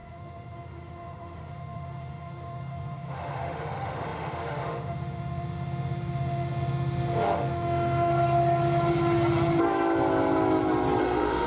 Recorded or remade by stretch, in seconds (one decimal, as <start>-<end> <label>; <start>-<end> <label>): 0.0-8.1 remade; 8.1-11.0 recorded; 11.0-11.5 remade